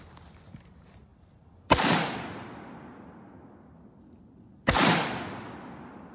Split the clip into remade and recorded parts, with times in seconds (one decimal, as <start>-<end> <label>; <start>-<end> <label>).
0.0-6.1 recorded